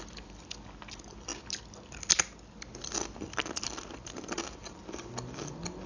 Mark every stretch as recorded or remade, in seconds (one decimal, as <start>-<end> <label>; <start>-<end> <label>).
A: 0.0-5.9 recorded